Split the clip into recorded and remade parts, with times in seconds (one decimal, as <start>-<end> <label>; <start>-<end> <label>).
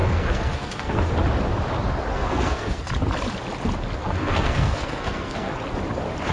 0.0-1.1 remade; 1.1-2.1 recorded; 2.1-2.9 remade; 2.9-4.0 recorded; 4.0-5.5 remade; 5.5-6.3 recorded